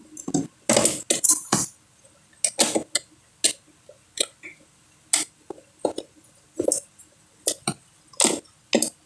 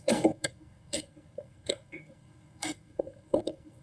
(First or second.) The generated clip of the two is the second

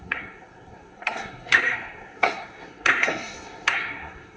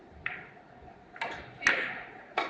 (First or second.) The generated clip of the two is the first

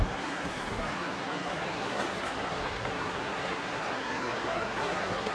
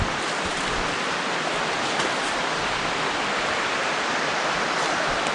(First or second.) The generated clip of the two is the first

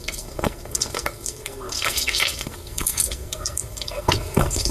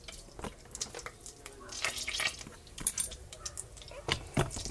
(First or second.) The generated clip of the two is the first